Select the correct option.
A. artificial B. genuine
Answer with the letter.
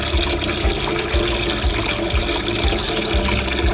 B